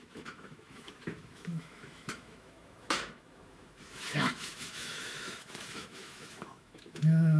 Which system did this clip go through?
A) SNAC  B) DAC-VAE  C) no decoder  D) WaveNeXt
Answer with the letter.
B